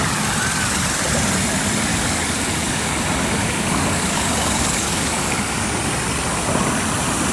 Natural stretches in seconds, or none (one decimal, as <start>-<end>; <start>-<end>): 0.0-1.9; 3.0-3.4; 5.8-7.3